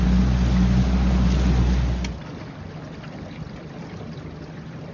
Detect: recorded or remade recorded